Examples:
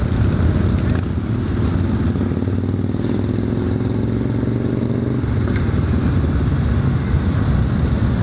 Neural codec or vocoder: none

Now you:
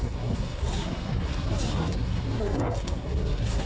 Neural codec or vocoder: codec, SNAC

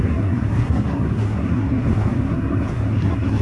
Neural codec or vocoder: codec, SNAC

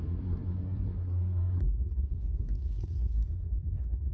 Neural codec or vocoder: codec, SNAC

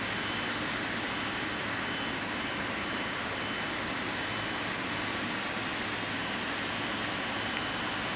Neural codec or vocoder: none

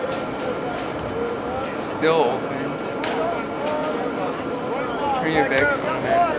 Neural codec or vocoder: none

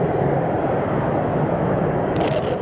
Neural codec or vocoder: none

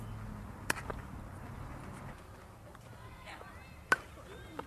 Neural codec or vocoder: none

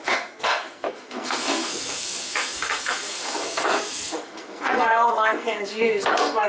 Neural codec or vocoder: codec, SNAC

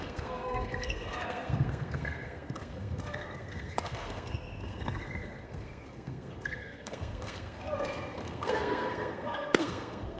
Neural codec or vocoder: codec, SNAC